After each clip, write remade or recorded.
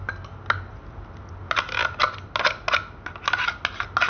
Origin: recorded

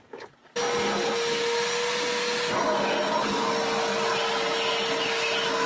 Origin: recorded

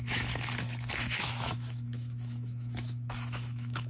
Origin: remade